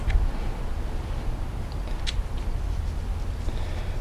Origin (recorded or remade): recorded